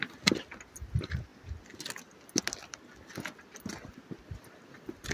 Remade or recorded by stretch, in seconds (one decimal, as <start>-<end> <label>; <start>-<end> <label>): 0.0-5.1 recorded